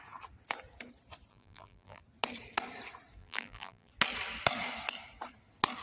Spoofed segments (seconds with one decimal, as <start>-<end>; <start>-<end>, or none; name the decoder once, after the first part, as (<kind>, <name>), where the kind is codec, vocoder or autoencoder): 1.3-2.0 (vocoder, BigVGAN v2); 3.2-3.9